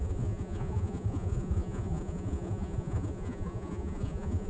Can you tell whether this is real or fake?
fake